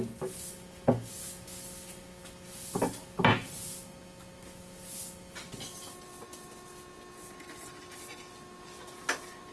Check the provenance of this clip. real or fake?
real